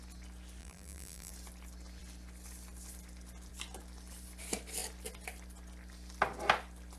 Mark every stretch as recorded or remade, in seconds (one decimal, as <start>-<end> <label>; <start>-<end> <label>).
0.0-0.6 recorded; 0.6-1.3 remade; 1.3-7.0 recorded